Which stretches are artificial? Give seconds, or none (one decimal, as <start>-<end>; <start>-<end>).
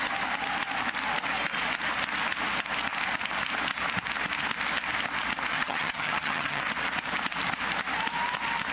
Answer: 5.5-6.6